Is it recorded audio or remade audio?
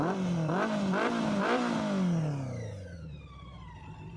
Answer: recorded